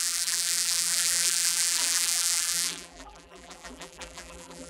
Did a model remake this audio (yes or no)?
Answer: yes